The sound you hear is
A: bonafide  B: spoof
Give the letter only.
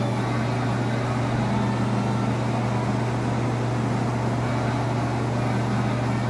A